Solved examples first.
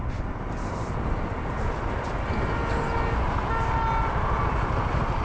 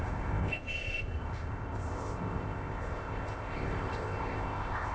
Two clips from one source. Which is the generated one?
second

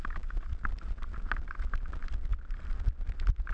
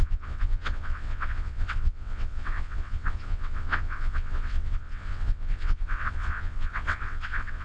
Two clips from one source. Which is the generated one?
second